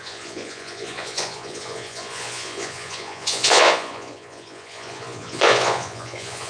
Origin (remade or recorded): remade